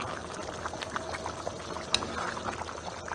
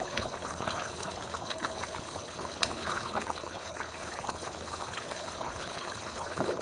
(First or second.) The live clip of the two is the first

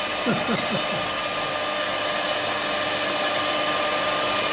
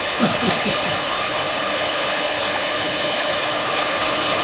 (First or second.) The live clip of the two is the first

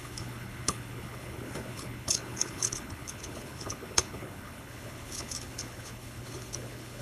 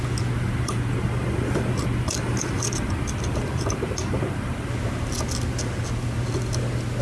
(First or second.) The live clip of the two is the second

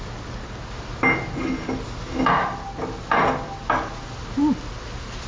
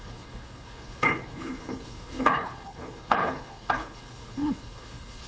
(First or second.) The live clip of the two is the first